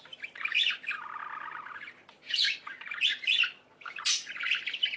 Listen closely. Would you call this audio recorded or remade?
remade